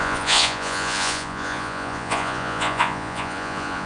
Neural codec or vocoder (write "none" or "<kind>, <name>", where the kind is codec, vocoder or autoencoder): vocoder, Vocos